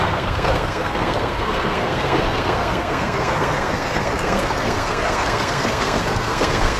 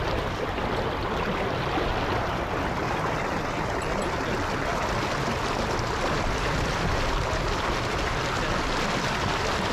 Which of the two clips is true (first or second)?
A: second